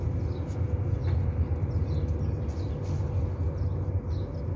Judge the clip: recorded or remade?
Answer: recorded